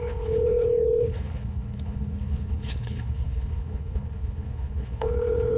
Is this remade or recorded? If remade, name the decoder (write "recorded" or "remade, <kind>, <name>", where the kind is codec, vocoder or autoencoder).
remade, codec, HILCodec